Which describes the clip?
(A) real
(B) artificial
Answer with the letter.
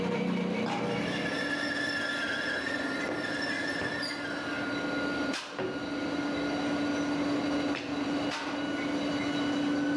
A